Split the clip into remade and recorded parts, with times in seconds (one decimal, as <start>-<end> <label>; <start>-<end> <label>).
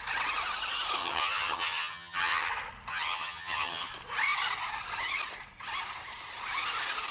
0.0-1.0 recorded; 1.0-2.5 remade; 2.5-2.9 recorded; 2.9-3.9 remade; 3.9-7.1 recorded